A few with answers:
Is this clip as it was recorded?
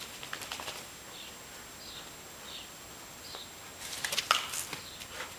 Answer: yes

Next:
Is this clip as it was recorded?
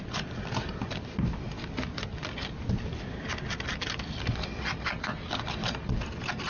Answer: yes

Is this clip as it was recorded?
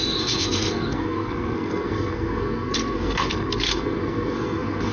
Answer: no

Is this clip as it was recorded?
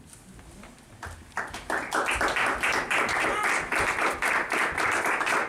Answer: yes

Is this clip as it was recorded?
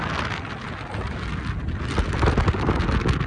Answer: yes